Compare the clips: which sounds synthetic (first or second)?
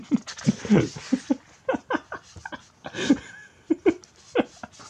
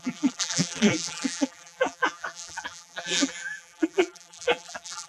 second